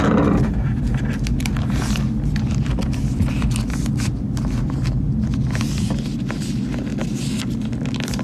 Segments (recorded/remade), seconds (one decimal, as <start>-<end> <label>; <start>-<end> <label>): 0.0-6.9 remade; 6.9-7.4 recorded; 7.4-8.2 remade